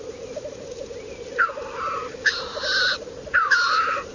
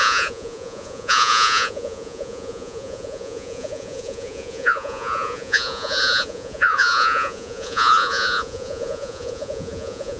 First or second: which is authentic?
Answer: first